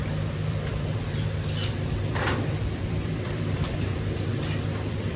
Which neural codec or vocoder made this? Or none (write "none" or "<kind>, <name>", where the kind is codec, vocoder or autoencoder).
vocoder, BigVGAN v2